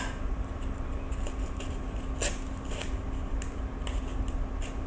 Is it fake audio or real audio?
real